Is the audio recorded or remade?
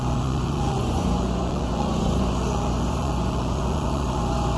remade